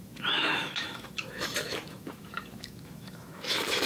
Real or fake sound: fake